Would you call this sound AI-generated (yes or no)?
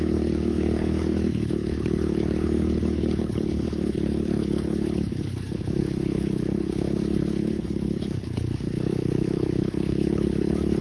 yes